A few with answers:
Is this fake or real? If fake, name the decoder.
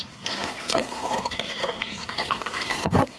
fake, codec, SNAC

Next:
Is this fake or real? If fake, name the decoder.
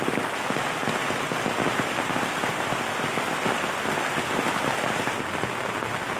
real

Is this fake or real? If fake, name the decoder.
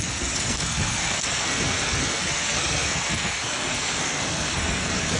fake, codec, SNAC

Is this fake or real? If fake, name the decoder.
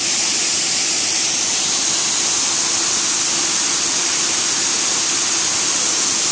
real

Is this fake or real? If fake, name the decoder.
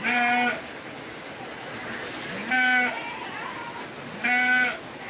real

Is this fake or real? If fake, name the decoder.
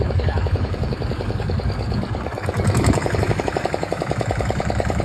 fake, codec, DAC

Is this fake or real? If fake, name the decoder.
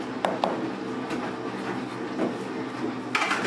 real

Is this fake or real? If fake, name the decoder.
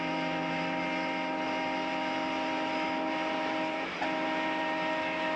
real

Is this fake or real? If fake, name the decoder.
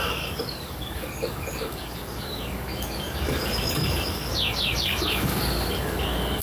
fake, codec, DAC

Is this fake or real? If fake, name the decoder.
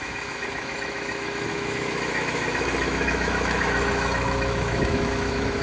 fake, autoencoder, DAC-VAE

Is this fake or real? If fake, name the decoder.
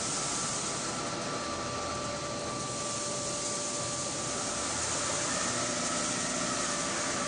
real